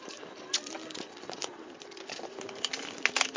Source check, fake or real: real